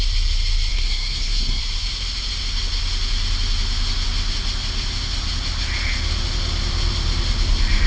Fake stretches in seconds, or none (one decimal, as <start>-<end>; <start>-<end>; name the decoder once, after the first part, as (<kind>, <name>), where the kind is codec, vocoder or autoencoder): 0.7-1.6 (codec, SNAC)